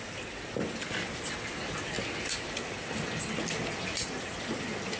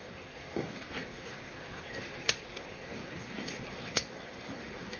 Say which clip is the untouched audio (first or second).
first